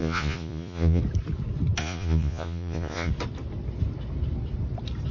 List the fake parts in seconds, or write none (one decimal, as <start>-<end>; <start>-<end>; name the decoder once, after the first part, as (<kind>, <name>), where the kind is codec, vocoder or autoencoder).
0.0-1.0 (vocoder, Vocos); 1.8-3.1